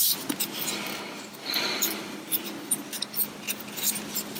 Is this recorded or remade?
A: recorded